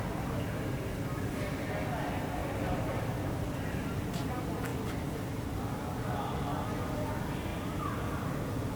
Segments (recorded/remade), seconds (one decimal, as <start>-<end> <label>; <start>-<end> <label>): 0.0-8.8 recorded